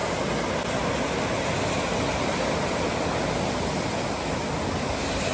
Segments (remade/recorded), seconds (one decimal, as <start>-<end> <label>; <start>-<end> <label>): 0.0-5.3 recorded